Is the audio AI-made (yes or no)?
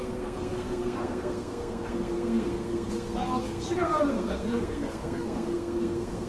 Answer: yes